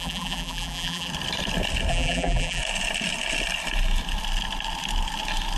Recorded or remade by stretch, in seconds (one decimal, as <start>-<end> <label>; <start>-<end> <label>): 0.0-1.1 remade; 1.1-1.9 recorded; 1.9-2.6 remade; 2.6-5.6 recorded